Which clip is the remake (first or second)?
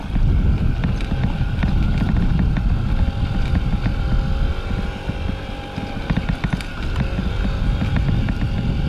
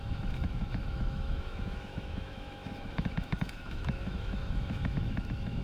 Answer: second